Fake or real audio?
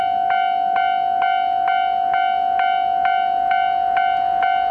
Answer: real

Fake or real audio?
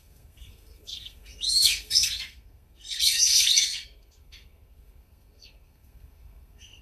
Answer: fake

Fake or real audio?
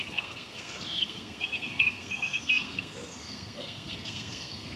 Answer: fake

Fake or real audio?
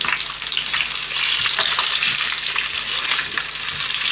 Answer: real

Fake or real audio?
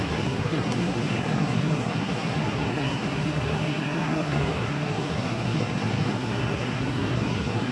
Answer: fake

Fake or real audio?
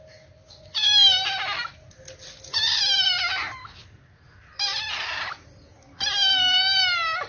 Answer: real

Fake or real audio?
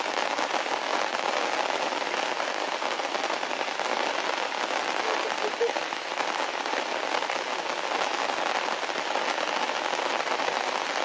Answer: real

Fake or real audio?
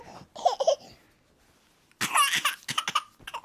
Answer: real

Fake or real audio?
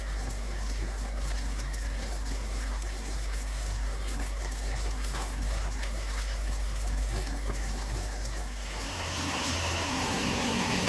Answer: fake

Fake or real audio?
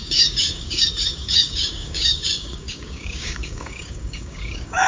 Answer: fake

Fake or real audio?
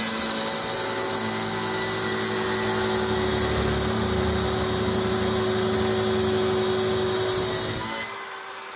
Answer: real